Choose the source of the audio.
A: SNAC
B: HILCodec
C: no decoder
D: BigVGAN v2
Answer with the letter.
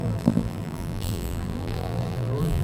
D